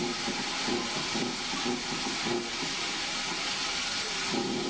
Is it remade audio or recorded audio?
recorded